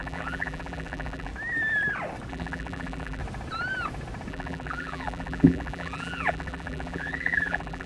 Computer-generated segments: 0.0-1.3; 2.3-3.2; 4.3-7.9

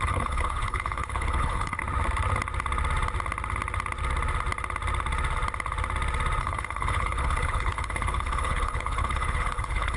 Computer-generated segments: 0.0-1.8; 6.4-10.0

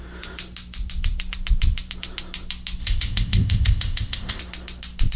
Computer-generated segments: 2.8-4.4

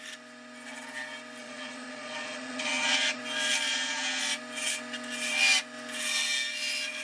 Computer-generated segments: 1.4-3.2; 3.7-4.2